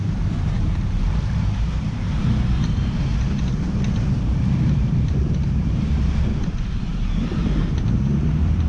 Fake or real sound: fake